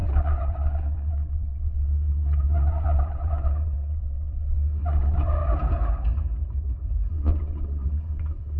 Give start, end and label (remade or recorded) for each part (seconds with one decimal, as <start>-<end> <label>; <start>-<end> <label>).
0.0-5.4 remade; 5.4-7.1 recorded; 7.1-8.6 remade